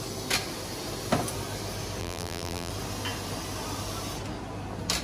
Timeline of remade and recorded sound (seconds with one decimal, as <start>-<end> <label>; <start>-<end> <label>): 0.0-2.0 recorded; 2.0-2.7 remade; 2.7-5.0 recorded